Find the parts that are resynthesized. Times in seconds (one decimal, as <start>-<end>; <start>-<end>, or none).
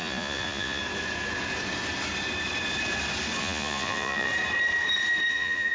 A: 0.0-0.8; 3.4-4.3; 5.3-5.7